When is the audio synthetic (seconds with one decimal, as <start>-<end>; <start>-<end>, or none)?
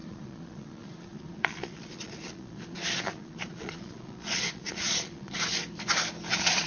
0.0-5.5; 6.3-6.7